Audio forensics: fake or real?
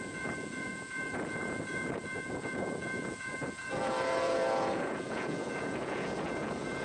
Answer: fake